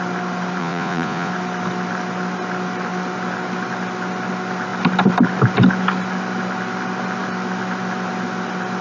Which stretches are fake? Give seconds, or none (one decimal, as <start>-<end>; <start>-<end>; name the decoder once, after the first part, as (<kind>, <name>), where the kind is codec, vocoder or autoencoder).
0.6-1.3 (vocoder, Vocos)